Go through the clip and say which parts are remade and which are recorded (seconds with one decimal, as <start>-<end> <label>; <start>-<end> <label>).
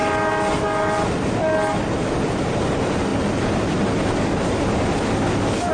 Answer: 0.0-5.7 recorded